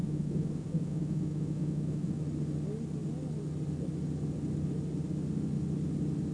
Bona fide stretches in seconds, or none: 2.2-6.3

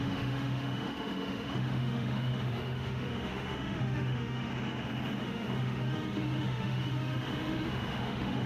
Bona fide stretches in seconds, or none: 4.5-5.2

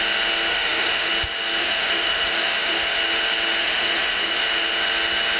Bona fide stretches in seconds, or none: 0.0-0.5; 1.1-1.6; 3.0-3.6; 4.4-5.4

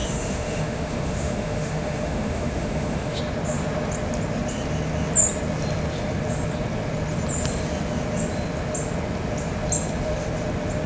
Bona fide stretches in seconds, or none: 3.2-10.9

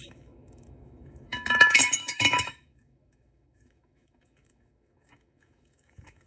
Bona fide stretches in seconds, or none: none

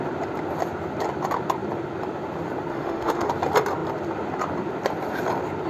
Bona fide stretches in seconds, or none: 0.0-2.7; 3.3-5.7

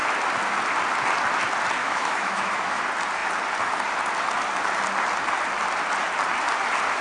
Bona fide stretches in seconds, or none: 0.0-1.8; 2.8-7.0